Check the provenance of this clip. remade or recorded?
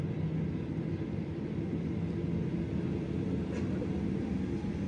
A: recorded